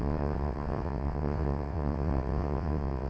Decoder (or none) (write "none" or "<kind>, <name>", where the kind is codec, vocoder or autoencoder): vocoder, WaveNeXt